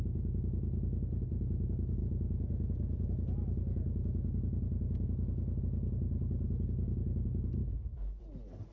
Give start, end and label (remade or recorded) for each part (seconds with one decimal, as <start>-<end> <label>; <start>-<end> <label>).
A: 0.0-7.6 recorded; 7.6-8.2 remade; 8.2-8.7 recorded